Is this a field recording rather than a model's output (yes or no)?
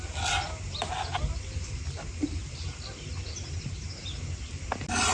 yes